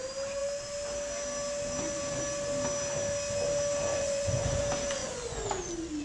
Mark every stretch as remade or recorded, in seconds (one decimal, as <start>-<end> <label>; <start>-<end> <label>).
0.0-3.9 recorded; 3.9-4.6 remade; 4.6-5.0 recorded; 5.0-5.6 remade; 5.6-6.0 recorded